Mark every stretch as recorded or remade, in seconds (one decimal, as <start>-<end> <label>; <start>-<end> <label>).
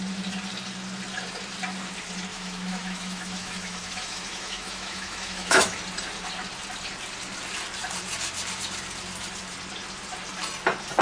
0.0-2.3 recorded; 2.3-5.8 remade; 5.8-11.0 recorded